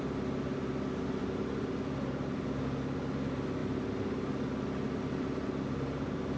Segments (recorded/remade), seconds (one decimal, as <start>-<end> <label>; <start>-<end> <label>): 0.0-1.2 recorded; 1.2-1.7 remade; 1.7-6.4 recorded